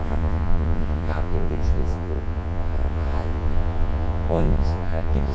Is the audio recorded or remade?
remade